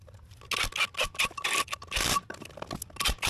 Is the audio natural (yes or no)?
yes